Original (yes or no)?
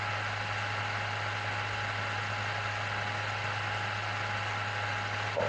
yes